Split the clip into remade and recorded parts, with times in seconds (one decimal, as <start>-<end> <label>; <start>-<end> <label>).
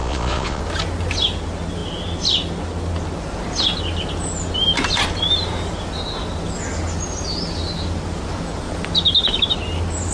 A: 0.0-0.6 remade; 0.6-10.1 recorded